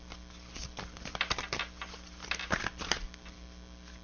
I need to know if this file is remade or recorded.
recorded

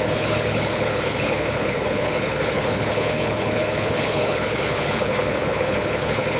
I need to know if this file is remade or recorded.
remade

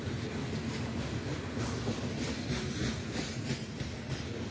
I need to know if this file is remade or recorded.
recorded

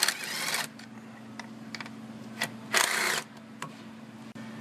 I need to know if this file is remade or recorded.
recorded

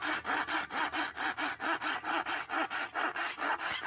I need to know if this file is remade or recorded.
recorded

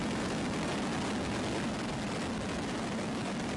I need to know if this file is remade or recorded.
recorded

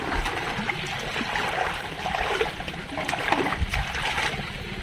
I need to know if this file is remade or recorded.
recorded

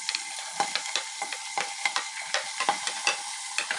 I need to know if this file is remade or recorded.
recorded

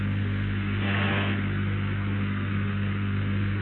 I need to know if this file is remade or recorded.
remade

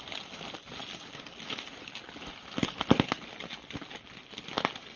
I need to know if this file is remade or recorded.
recorded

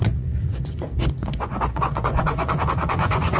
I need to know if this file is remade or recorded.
remade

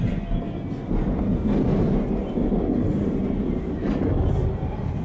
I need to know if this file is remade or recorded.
recorded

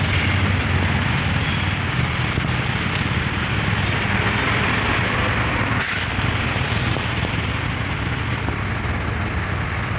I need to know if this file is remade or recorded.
remade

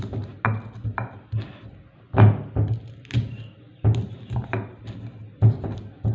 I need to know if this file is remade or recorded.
recorded